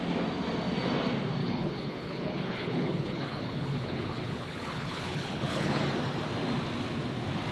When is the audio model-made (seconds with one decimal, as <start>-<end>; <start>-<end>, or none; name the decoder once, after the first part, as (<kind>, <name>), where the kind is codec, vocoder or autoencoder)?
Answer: 1.4-5.8 (codec, HILCodec)